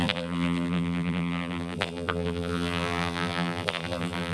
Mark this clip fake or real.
fake